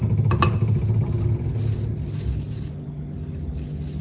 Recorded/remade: recorded